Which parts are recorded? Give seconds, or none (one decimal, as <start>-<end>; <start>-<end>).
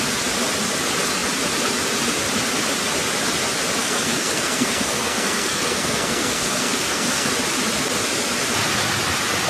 0.0-3.8; 7.3-9.5